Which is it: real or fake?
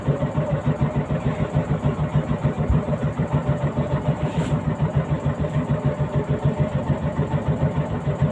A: fake